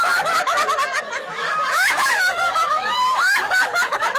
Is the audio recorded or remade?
remade